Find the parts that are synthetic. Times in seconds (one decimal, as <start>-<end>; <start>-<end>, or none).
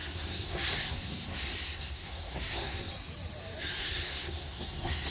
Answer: 0.0-2.9; 3.6-5.1